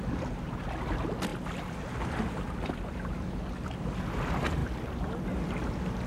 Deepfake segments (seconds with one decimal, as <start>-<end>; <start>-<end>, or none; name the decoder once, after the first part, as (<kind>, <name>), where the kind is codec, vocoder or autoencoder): none